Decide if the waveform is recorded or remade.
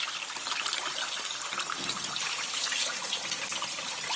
recorded